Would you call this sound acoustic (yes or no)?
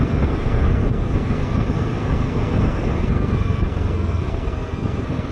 no